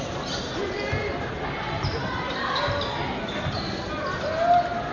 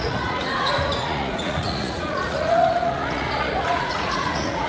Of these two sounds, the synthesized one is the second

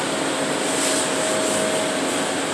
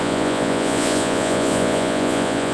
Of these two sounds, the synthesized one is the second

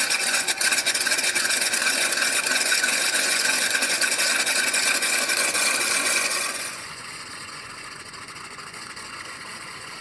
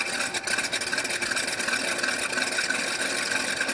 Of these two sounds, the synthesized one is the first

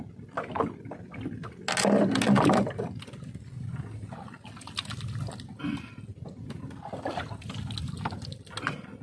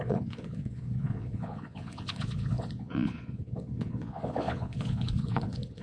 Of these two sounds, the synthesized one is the second